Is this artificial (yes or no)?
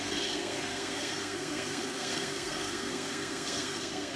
yes